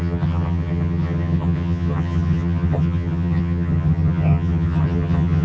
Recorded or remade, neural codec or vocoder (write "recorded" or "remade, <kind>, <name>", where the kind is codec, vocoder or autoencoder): remade, vocoder, HiFi-GAN